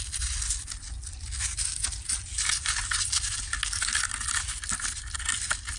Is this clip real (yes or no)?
yes